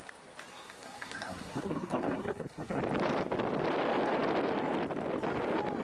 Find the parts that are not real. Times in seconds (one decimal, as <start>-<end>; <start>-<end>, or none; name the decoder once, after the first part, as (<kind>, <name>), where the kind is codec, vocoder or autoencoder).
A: 0.5-2.8 (codec, SNAC)